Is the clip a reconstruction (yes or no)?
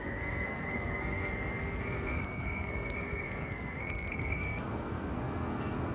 yes